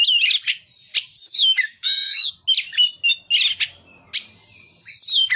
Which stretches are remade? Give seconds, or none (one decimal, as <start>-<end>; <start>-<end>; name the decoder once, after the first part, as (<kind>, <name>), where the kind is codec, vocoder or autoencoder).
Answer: 1.1-2.3 (codec, DAC)